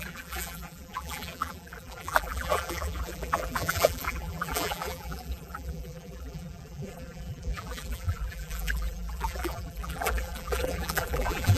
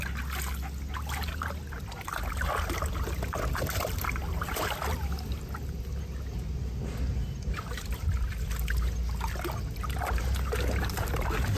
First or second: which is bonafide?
second